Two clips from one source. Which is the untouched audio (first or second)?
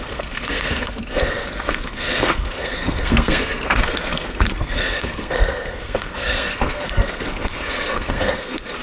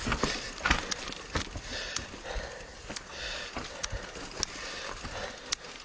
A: second